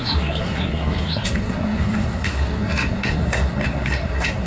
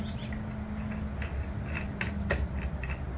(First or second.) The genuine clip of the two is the second